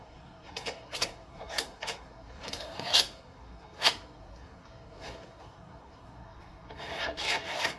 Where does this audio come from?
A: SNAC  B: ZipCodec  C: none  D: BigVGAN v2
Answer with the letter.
A